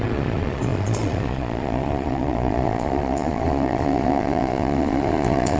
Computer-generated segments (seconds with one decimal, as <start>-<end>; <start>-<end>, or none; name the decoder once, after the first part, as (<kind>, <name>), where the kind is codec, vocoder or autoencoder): 0.0-5.6 (vocoder, Vocos)